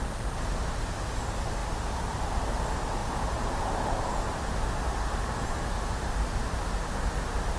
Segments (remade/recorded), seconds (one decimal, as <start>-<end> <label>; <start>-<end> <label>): 0.0-3.0 recorded; 3.0-4.3 remade; 4.3-7.6 recorded